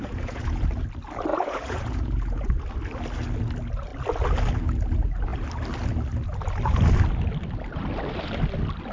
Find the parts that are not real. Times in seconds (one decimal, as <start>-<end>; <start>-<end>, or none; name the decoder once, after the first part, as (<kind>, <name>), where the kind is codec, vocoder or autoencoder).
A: 0.0-0.6 (vocoder, Vocos); 1.3-2.5